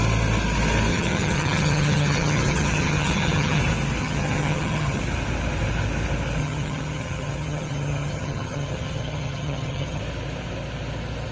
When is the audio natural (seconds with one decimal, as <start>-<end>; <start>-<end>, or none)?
0.0-0.9; 3.6-4.0; 5.0-6.4; 10.0-11.3